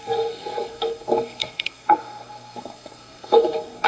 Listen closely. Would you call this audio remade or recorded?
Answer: remade